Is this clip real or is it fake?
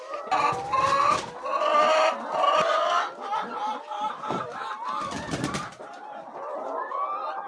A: real